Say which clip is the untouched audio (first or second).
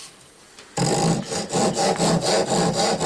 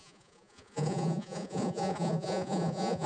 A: first